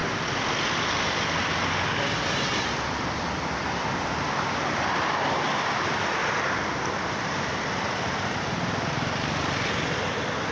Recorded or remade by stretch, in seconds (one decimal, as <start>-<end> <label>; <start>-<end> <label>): 0.0-10.5 recorded